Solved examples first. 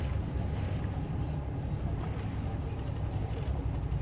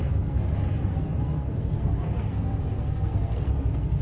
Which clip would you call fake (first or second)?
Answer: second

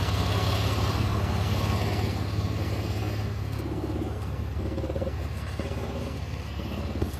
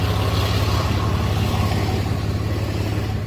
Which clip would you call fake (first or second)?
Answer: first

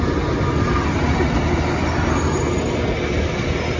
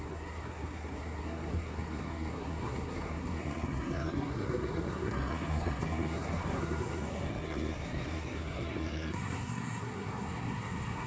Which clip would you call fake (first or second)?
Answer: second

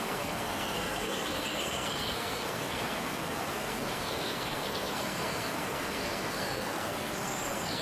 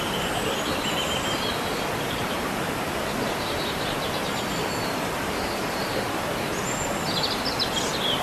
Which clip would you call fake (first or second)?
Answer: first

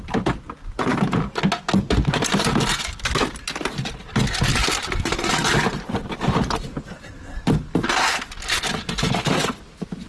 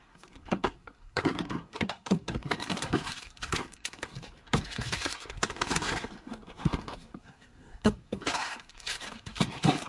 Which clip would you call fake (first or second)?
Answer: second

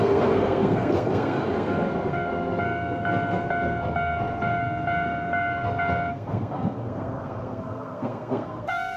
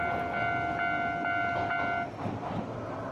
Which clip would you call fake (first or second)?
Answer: first